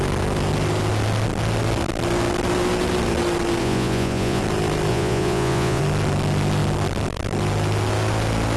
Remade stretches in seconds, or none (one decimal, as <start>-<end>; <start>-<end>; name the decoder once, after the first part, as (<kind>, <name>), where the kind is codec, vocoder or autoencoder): 3.6-4.4 (vocoder, Vocos); 4.9-5.8